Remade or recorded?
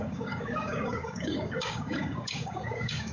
remade